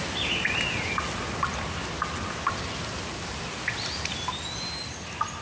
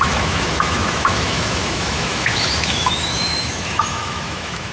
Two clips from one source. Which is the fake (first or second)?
second